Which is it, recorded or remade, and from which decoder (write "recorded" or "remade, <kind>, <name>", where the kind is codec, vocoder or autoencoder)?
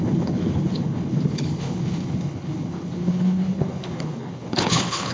remade, codec, HILCodec